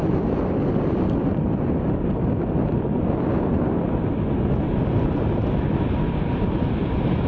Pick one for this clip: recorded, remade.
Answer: recorded